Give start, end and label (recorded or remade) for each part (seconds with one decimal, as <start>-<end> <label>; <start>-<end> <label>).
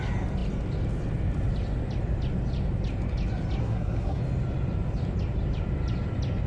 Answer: 0.0-3.6 recorded; 3.6-4.2 remade; 4.2-6.5 recorded